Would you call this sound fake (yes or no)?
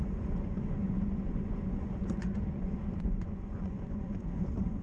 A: yes